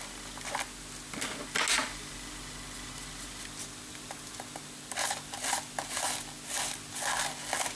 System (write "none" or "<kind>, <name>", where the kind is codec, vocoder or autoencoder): none